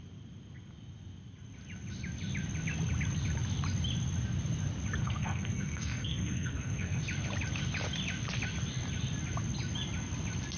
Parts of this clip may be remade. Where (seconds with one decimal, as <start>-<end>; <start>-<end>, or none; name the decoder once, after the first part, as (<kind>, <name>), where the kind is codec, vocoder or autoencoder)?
5.0-7.0 (codec, SNAC)